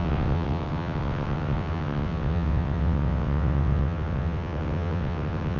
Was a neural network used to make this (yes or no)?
yes